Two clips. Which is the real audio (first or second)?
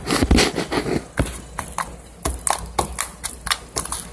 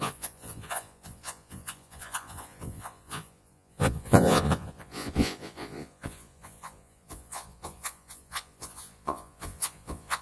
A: first